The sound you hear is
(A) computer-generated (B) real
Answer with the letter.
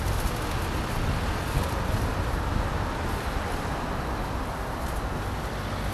B